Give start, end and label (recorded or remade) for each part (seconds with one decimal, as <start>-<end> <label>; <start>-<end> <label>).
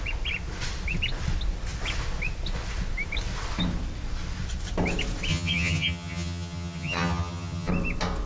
0.0-5.3 recorded; 5.3-7.7 remade; 7.7-8.3 recorded